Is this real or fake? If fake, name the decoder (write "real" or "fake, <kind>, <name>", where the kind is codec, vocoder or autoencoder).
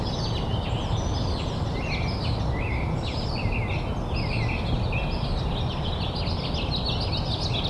real